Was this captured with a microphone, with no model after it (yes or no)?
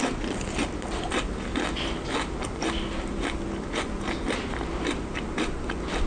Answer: yes